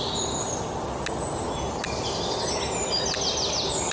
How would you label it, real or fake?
real